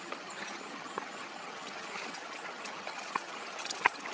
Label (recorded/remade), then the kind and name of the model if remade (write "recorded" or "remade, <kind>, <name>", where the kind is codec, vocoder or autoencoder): remade, vocoder, HiFi-GAN